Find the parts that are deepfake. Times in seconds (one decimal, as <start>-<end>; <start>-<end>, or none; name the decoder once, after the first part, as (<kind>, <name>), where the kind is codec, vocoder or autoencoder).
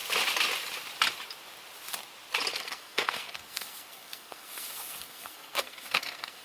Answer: 2.5-6.4 (codec, SNAC)